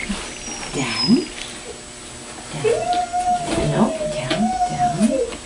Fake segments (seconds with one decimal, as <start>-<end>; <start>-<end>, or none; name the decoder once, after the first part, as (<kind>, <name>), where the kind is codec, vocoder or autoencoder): none